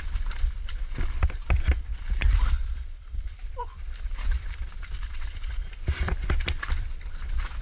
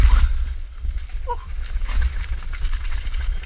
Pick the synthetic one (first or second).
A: first